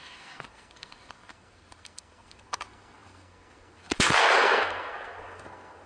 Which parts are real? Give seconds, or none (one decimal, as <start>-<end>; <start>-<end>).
none